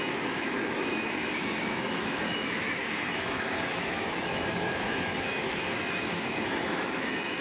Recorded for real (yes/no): no